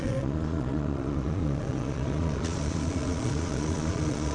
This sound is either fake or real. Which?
fake